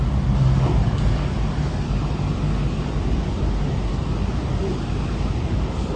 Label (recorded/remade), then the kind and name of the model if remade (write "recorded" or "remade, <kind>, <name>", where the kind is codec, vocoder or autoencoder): recorded